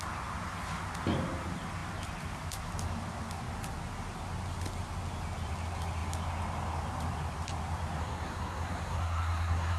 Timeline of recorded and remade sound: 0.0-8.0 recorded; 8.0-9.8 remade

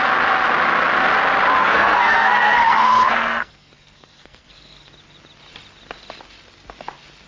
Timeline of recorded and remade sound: 0.0-1.6 recorded; 1.6-4.9 remade; 4.9-7.3 recorded